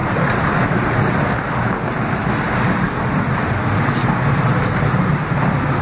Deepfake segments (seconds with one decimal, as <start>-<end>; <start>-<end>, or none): none